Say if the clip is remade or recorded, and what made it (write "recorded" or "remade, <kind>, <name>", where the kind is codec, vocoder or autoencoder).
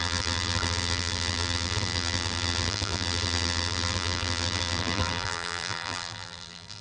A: remade, vocoder, BigVGAN v2